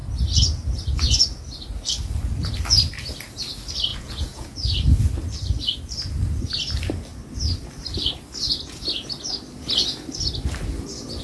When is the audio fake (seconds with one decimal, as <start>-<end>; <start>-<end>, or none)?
3.9-4.7